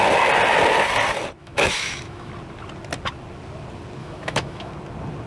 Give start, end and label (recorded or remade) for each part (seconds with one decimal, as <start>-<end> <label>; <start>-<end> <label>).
0.0-1.4 recorded; 1.4-2.3 remade; 2.3-4.0 recorded; 4.0-4.7 remade; 4.7-5.3 recorded